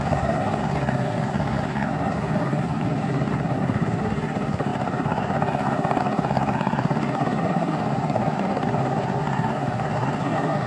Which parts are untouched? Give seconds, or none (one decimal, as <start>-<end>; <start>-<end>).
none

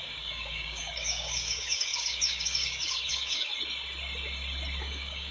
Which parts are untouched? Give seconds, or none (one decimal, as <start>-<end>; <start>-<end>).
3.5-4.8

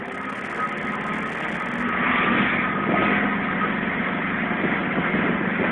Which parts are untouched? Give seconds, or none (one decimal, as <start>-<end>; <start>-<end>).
0.0-5.7

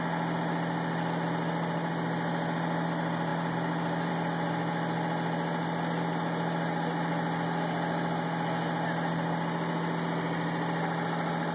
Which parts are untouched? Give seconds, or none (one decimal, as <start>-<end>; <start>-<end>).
0.0-11.5

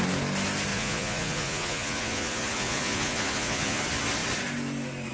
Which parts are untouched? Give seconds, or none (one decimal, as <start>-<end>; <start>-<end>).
0.0-0.7; 3.8-5.1